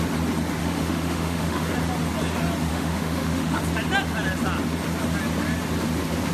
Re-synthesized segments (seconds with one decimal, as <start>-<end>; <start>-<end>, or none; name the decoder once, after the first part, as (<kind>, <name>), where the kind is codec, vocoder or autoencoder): 0.6-1.7 (autoencoder, DAC-VAE); 2.7-3.6